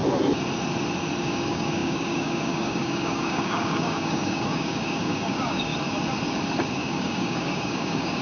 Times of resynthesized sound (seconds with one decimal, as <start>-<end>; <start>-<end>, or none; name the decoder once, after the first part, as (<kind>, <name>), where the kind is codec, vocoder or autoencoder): 1.2-5.7 (codec, DAC); 6.7-8.2

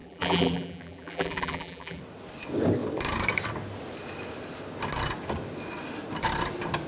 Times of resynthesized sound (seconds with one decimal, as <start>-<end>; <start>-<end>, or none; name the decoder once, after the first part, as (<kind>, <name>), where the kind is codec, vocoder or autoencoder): 0.0-2.0 (vocoder, BigVGAN v2)

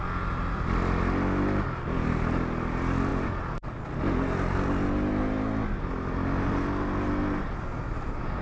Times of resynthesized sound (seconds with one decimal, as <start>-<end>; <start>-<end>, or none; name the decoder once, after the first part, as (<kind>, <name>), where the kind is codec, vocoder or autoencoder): none

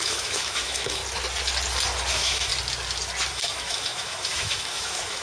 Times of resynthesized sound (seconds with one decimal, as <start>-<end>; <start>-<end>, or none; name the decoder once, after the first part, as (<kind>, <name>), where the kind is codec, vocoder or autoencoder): 0.0-1.0 (autoencoder, DAC-VAE); 2.1-2.5; 3.3-5.2